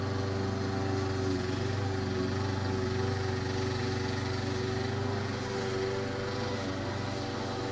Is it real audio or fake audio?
real